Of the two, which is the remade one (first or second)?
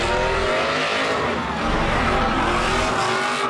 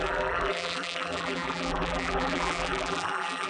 second